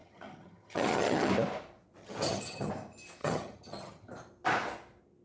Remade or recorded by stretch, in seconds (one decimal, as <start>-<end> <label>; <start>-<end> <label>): 0.0-1.3 remade; 1.3-2.0 recorded; 2.0-2.7 remade; 2.7-3.2 recorded; 3.2-4.1 remade; 4.1-5.2 recorded

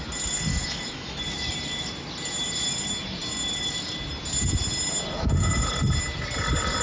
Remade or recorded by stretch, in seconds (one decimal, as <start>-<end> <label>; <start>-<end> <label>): 0.0-0.5 recorded; 0.5-1.2 remade; 1.2-6.8 recorded

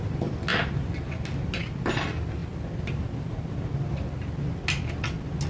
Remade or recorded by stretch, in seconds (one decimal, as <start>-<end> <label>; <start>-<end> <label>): 0.0-5.5 recorded

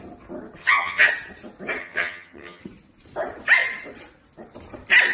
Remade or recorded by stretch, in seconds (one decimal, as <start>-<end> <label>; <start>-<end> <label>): 0.0-0.6 recorded; 0.6-1.1 remade; 1.1-1.8 recorded; 1.8-2.6 remade; 2.6-5.1 recorded

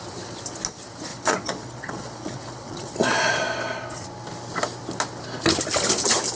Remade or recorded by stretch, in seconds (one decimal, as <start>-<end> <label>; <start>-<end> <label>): 0.0-1.1 recorded; 1.1-2.9 remade; 2.9-6.4 recorded

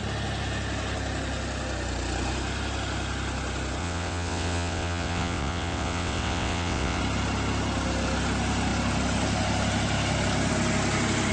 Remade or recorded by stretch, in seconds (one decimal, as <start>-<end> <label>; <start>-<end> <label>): 0.0-3.8 recorded; 3.8-7.0 remade; 7.0-11.3 recorded

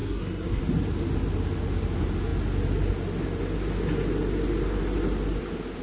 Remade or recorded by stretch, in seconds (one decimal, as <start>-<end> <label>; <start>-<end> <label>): 0.0-0.6 remade; 0.6-5.8 recorded

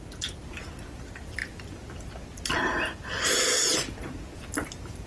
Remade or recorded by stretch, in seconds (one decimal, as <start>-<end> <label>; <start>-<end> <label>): 0.0-5.1 recorded